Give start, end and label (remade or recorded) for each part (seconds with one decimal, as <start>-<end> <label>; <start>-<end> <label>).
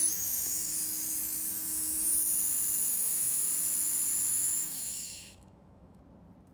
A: 0.0-0.7 remade; 0.7-1.5 recorded; 1.5-2.1 remade; 2.1-2.9 recorded; 2.9-3.5 remade; 3.5-4.3 recorded; 4.3-6.0 remade; 6.0-6.5 recorded